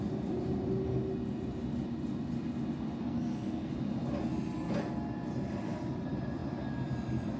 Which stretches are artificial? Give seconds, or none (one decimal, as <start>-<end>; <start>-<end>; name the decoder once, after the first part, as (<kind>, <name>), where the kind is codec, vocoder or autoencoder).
3.0-3.7 (codec, SNAC)